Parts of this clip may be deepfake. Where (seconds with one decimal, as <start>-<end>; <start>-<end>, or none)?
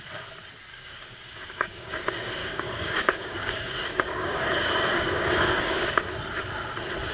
0.7-1.9; 2.4-6.0